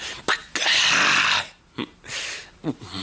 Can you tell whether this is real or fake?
real